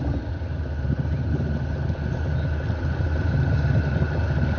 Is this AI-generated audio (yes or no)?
no